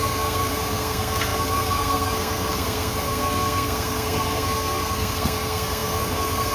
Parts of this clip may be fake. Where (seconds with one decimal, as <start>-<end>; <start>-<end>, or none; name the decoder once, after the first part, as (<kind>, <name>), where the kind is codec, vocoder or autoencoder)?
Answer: 0.0-6.5 (codec, SNAC)